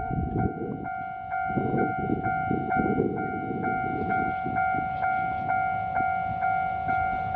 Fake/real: real